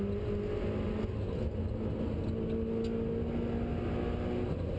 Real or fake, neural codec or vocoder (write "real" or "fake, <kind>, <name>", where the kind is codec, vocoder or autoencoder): real